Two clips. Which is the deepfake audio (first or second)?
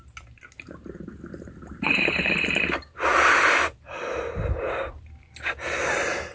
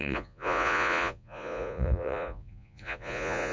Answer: second